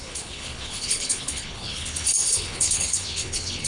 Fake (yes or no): yes